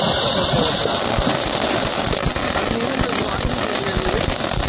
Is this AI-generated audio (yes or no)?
no